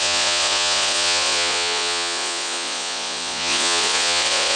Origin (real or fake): fake